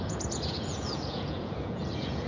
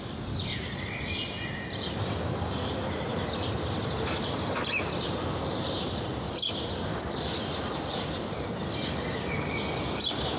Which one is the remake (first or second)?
first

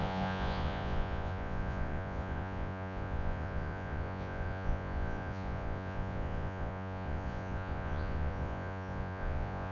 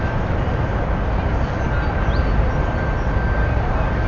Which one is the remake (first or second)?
first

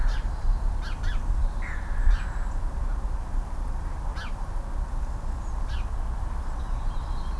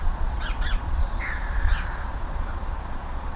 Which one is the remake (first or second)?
second